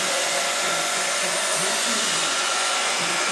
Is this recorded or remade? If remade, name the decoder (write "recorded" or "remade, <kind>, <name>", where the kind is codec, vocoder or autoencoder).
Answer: remade, vocoder, Vocos